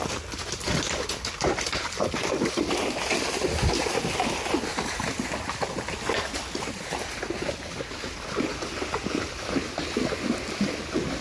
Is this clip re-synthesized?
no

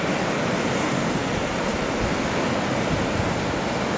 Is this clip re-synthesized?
no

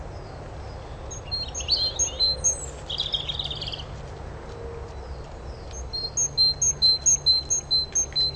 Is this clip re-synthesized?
no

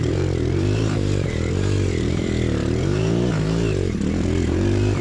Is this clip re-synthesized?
yes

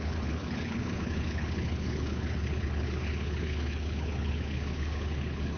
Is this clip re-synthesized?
yes